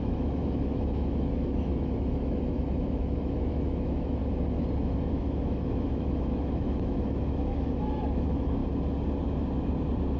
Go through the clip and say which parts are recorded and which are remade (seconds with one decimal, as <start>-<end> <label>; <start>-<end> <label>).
0.0-4.2 remade; 4.2-5.1 recorded; 5.1-8.6 remade; 8.6-10.2 recorded